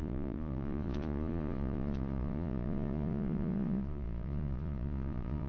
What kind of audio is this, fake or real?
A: fake